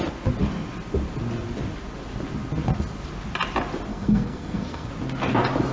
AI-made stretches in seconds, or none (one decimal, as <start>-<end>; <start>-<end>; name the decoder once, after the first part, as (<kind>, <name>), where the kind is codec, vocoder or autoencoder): 3.9-4.9 (codec, SNAC)